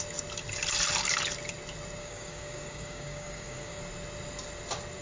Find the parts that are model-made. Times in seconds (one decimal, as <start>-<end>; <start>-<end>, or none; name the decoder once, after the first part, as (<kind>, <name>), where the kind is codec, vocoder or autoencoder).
2.0-3.8 (codec, DAC)